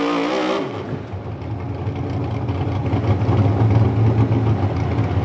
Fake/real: real